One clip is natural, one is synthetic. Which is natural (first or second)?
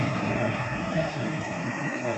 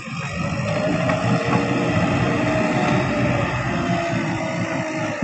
second